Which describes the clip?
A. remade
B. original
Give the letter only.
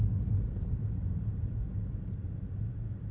B